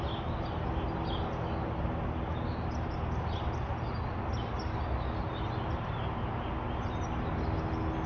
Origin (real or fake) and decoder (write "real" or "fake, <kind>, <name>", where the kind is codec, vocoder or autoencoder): real